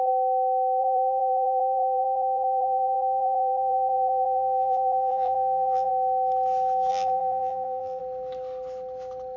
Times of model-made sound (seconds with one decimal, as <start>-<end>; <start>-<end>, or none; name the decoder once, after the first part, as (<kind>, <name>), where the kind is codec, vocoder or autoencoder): 0.8-5.9 (vocoder, BigVGAN v2); 6.9-8.0